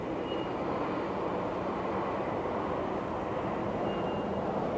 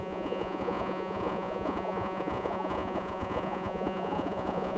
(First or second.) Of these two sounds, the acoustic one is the first